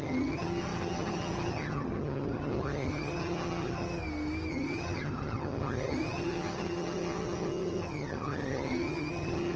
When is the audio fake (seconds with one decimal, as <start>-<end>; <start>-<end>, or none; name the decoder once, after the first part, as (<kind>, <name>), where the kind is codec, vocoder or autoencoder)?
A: 0.0-4.0 (vocoder, HiFi-GAN); 4.5-9.6